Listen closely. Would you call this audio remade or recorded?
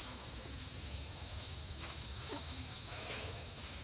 remade